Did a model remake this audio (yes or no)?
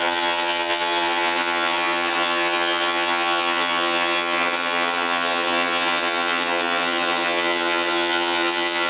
yes